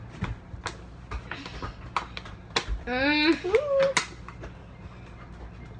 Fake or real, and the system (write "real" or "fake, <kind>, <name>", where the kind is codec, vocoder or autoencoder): real